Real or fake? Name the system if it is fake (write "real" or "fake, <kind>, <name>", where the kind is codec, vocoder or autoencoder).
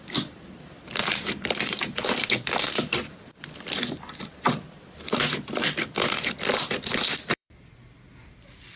fake, vocoder, BigVGAN v2